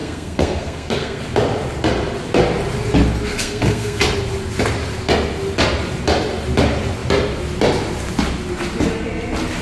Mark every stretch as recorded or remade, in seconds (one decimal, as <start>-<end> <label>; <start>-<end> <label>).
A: 0.0-1.2 remade; 1.2-3.3 recorded; 3.3-4.0 remade; 4.0-9.6 recorded